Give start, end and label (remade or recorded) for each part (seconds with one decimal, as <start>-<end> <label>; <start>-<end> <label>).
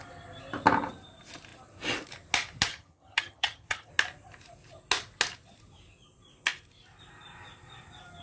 0.0-2.7 recorded; 2.7-3.9 remade; 3.9-8.2 recorded